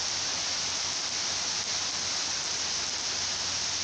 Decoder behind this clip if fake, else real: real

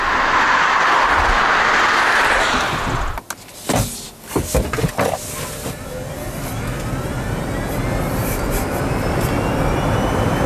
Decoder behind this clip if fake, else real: real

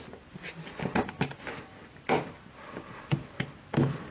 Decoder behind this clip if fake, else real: real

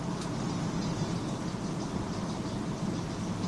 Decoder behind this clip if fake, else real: real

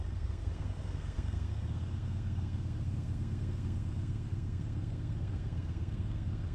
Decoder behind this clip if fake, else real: fake, codec, SNAC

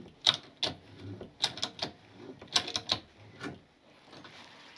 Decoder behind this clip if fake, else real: real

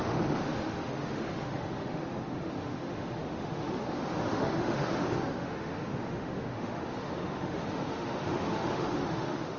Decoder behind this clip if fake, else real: fake, autoencoder, DAC-VAE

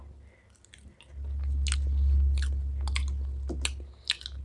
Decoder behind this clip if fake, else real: real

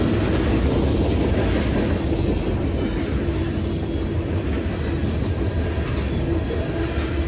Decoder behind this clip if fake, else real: real